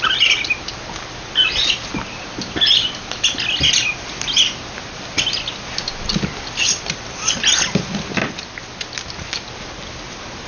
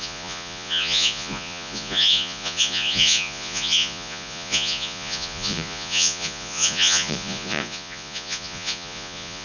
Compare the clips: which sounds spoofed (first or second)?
second